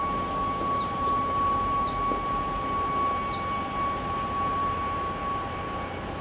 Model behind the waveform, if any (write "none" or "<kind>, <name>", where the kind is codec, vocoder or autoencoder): none